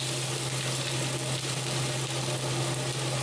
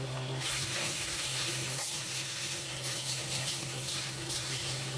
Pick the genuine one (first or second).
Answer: first